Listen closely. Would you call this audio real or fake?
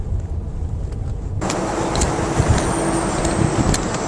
real